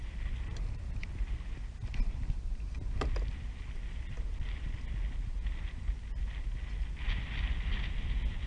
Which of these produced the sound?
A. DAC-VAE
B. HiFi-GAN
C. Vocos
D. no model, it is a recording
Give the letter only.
D